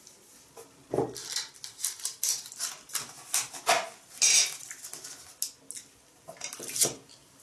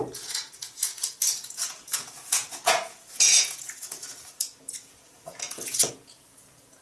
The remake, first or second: second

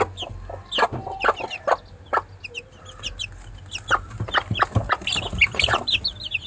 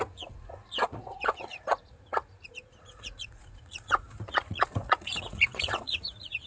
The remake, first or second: second